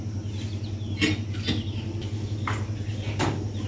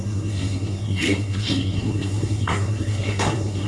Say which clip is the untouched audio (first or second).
first